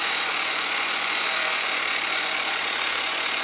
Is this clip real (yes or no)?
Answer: no